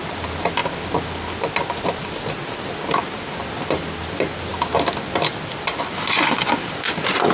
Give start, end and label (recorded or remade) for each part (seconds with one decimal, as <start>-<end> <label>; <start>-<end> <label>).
0.0-7.3 recorded